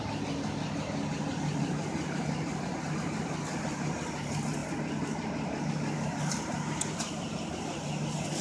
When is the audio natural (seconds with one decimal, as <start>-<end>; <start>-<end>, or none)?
0.0-8.4